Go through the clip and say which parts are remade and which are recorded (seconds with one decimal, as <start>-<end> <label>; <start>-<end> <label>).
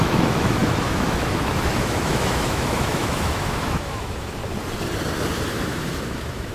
0.0-4.4 remade; 4.4-5.5 recorded; 5.5-6.5 remade